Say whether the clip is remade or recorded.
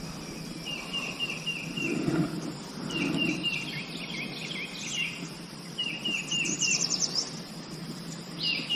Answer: recorded